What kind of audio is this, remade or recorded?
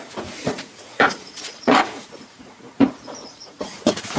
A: remade